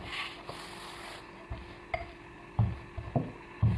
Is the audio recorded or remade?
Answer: recorded